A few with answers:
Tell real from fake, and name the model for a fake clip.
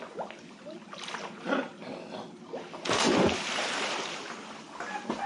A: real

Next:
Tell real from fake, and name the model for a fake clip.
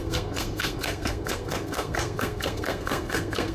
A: fake, codec, SNAC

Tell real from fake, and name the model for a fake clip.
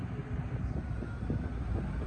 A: real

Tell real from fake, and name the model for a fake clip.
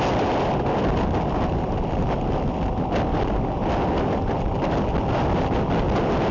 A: real